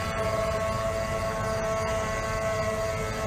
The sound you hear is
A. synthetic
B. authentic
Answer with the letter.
B